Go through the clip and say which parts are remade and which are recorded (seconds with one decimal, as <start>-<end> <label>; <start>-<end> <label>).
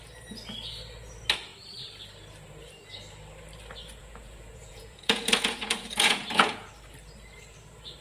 0.0-4.0 recorded; 4.0-6.7 remade; 6.7-8.0 recorded